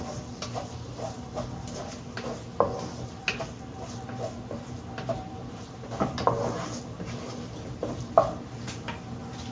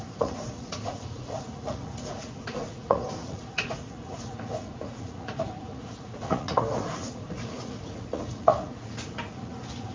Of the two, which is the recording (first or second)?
first